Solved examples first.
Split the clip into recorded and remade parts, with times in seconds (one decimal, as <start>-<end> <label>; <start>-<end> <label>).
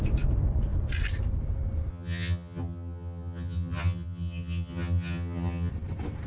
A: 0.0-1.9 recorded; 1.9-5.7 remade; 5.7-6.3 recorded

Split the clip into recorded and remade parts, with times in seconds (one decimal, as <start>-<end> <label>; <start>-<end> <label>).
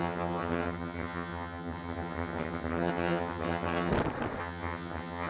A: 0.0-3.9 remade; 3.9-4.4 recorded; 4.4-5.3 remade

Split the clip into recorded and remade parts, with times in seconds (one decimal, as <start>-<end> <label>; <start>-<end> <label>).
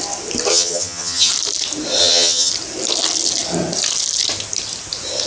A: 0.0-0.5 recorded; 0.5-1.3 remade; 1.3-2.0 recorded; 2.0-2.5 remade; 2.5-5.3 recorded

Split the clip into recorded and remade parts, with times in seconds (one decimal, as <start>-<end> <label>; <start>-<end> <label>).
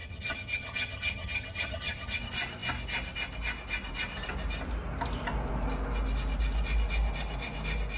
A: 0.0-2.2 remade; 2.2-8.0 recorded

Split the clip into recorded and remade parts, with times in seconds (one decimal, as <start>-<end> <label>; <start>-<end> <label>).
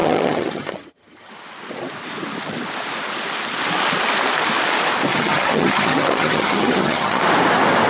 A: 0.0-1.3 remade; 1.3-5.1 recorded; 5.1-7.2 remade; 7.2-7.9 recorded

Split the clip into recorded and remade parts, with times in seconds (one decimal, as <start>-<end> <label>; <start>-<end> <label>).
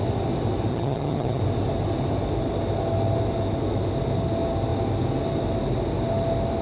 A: 0.0-0.7 recorded; 0.7-1.4 remade; 1.4-6.6 recorded